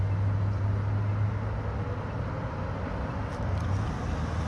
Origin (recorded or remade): recorded